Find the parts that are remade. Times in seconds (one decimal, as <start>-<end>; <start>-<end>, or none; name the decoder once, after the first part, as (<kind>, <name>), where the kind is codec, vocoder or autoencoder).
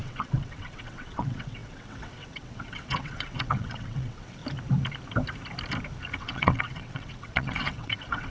0.0-4.4 (vocoder, WaveNeXt); 6.2-8.3